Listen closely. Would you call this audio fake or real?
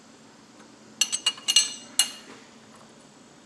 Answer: real